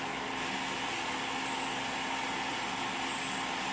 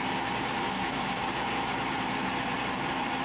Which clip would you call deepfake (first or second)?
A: second